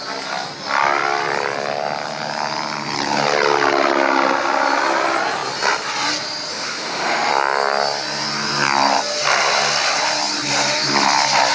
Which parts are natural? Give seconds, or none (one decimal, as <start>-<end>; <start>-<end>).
0.0-6.5; 7.3-11.5